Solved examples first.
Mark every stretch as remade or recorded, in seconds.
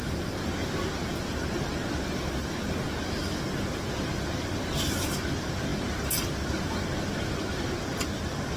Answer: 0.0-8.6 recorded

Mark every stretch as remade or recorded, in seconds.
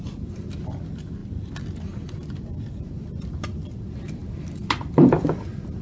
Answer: 0.0-4.2 remade; 4.2-4.9 recorded; 4.9-5.8 remade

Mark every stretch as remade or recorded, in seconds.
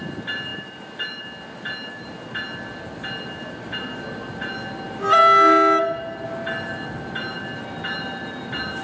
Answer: 0.0-0.5 recorded; 0.5-1.2 remade; 1.2-8.8 recorded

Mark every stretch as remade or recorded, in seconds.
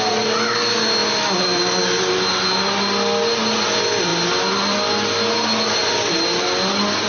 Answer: 0.0-7.1 recorded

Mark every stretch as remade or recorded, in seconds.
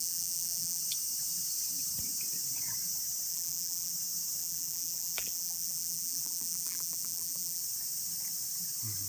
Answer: 0.0-0.8 remade; 0.8-3.3 recorded; 3.3-3.9 remade; 3.9-4.4 recorded; 4.4-7.6 remade; 7.6-9.1 recorded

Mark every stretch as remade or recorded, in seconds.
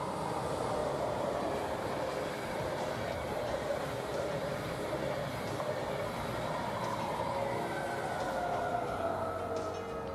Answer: 0.0-0.8 recorded; 0.8-4.7 remade; 4.7-10.1 recorded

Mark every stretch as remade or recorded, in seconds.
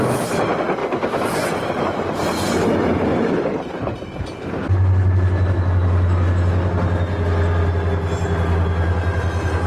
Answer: 0.0-0.8 recorded; 0.8-1.7 remade; 1.7-3.1 recorded; 3.1-4.2 remade; 4.2-9.7 recorded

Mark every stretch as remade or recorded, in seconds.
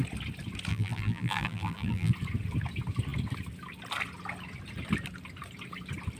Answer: 0.0-0.7 recorded; 0.7-2.1 remade; 2.1-6.2 recorded